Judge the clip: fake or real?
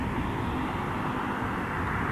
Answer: real